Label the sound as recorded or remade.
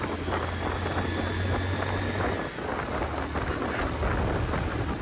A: recorded